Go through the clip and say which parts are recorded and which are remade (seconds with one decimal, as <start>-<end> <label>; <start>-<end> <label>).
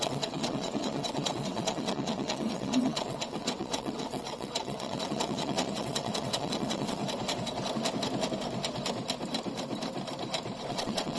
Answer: 0.0-7.0 remade; 7.0-10.7 recorded; 10.7-11.2 remade